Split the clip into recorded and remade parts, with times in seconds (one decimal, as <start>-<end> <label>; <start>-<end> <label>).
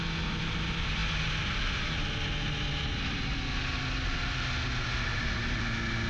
0.0-6.1 recorded